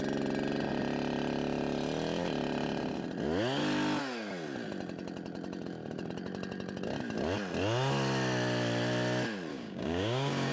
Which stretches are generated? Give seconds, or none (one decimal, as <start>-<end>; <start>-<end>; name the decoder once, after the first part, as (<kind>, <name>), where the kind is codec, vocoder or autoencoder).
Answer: 9.5-10.5 (codec, DAC)